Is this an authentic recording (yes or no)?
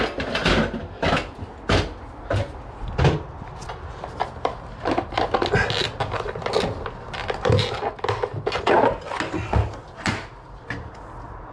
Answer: yes